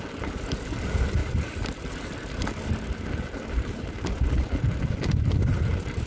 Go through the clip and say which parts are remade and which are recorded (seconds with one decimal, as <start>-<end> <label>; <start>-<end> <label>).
0.0-1.2 recorded; 1.2-1.9 remade; 1.9-6.1 recorded